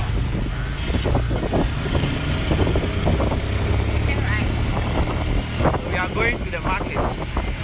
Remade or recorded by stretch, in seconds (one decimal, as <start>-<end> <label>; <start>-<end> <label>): 0.0-7.6 recorded